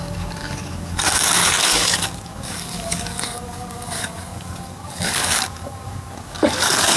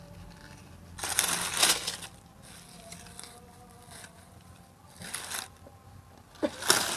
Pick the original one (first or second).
second